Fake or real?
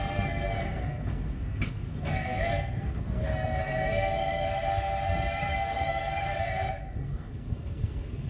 fake